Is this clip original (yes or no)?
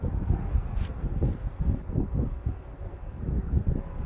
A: no